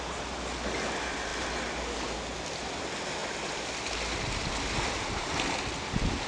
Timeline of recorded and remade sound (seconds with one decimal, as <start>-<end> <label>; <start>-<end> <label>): 0.0-6.3 recorded